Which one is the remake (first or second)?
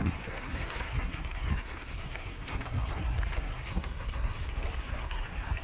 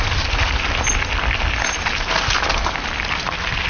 first